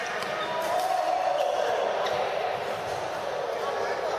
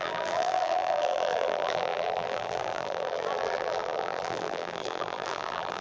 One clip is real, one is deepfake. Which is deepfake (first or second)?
second